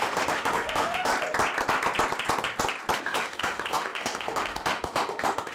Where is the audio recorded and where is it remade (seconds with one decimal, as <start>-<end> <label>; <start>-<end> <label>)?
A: 0.0-1.1 remade; 1.1-3.0 recorded; 3.0-5.5 remade